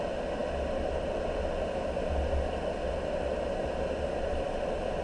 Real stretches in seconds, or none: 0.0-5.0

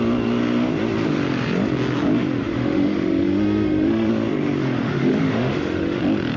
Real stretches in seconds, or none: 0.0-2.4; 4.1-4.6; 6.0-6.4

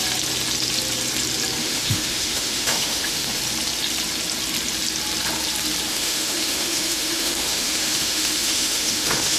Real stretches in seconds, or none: 0.0-1.6; 3.4-5.9

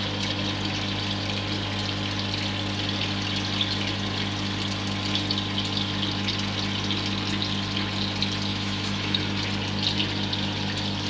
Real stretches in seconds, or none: 0.0-8.5; 9.2-11.1